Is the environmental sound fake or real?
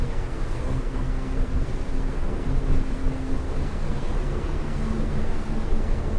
fake